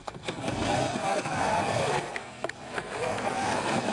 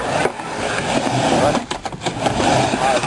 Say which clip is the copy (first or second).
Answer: first